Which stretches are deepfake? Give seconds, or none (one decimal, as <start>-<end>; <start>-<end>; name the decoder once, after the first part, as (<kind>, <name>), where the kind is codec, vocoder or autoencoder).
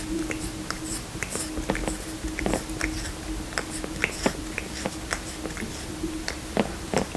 none